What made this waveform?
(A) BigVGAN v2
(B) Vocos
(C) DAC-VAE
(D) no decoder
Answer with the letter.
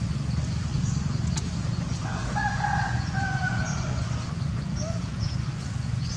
B